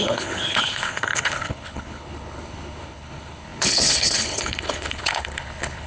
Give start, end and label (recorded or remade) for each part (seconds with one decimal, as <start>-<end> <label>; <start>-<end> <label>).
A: 0.0-5.9 remade